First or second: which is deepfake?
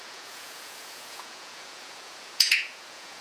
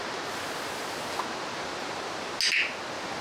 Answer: first